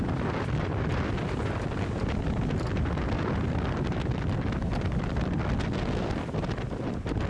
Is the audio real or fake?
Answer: real